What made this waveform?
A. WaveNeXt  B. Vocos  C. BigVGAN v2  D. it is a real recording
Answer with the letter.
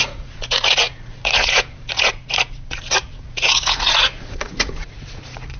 B